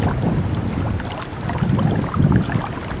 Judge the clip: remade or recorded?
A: recorded